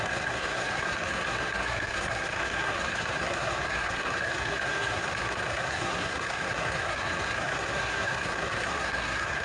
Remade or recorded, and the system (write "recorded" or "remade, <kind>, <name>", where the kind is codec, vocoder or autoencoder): remade, codec, SNAC